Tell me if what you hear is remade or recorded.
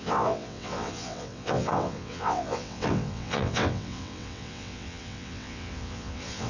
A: remade